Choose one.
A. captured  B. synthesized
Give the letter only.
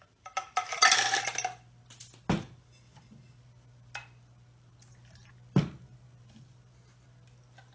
A